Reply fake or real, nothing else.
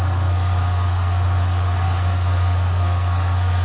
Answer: fake